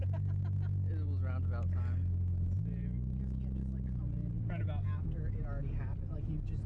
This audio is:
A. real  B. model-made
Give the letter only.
A